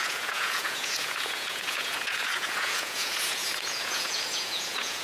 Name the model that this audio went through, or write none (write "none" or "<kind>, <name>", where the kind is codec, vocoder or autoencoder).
vocoder, Vocos